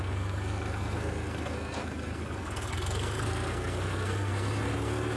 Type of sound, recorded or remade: remade